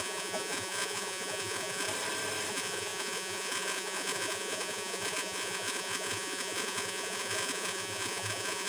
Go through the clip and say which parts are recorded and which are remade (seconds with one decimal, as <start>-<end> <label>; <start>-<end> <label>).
0.0-1.9 remade; 1.9-2.5 recorded; 2.5-8.7 remade